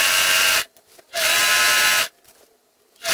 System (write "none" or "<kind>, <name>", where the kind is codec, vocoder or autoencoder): none